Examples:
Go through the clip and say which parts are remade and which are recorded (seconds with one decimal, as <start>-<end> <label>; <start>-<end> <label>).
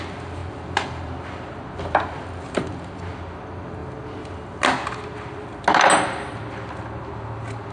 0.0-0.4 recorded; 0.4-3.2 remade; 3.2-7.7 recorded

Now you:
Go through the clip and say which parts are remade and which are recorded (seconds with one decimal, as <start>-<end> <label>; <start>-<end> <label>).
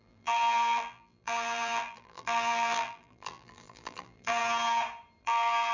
0.0-4.4 remade; 4.4-5.2 recorded; 5.2-5.7 remade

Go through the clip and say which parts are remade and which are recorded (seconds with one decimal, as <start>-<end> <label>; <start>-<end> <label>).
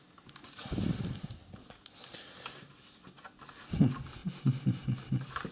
0.0-4.2 recorded; 4.2-5.5 remade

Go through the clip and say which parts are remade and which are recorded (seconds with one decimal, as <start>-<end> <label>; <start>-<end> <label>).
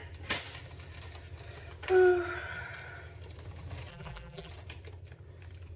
0.0-3.9 recorded; 3.9-4.5 remade; 4.5-5.8 recorded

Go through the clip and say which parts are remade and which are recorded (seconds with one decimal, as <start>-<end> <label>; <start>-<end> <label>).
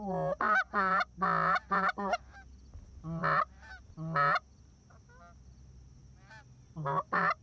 0.0-3.2 recorded; 3.2-3.9 remade; 3.9-7.4 recorded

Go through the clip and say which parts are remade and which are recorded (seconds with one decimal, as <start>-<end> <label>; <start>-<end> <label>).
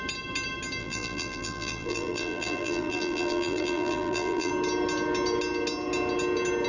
0.0-0.8 recorded; 0.8-4.5 remade; 4.5-6.7 recorded